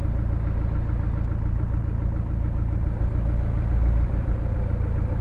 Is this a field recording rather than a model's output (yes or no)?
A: yes